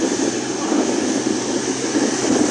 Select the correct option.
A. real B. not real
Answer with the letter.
A